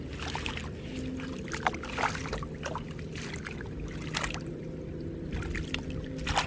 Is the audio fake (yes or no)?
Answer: no